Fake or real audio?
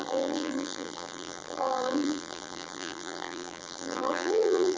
fake